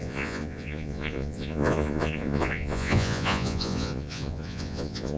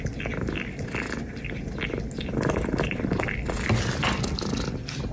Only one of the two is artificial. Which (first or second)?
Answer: first